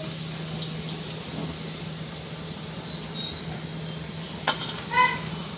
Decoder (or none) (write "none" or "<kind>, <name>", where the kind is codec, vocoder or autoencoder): none